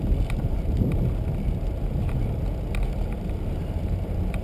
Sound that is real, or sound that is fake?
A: real